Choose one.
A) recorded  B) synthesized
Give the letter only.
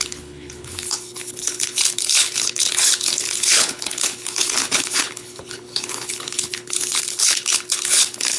B